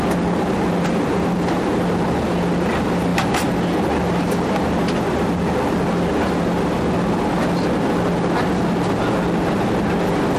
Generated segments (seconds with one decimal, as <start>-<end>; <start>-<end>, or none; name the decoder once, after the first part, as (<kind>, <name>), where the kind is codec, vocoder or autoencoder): none